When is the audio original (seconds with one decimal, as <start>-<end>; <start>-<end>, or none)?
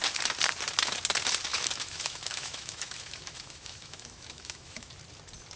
0.0-1.5; 4.9-5.6